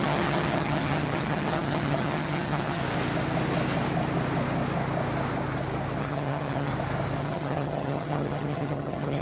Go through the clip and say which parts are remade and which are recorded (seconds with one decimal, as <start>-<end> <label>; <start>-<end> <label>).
0.0-2.8 remade; 2.8-6.0 recorded; 6.0-6.7 remade; 6.7-7.2 recorded; 7.2-9.2 remade